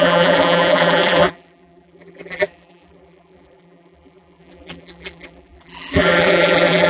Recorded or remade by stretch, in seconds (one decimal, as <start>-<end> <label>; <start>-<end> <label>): 0.0-6.9 remade